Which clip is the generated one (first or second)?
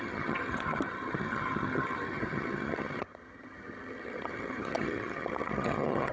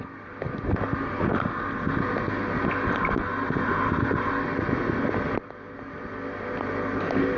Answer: first